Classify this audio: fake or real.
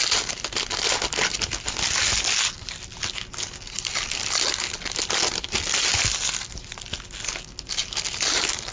real